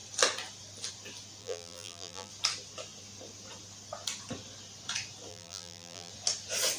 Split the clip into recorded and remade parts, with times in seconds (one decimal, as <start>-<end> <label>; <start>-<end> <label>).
0.0-1.4 recorded; 1.4-2.3 remade; 2.3-5.3 recorded; 5.3-6.1 remade; 6.1-6.8 recorded